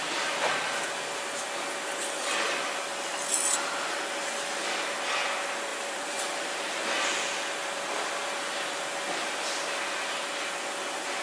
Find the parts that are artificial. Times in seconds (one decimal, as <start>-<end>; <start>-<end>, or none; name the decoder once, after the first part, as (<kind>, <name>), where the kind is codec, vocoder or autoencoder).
5.7-6.6 (vocoder, BigVGAN v2)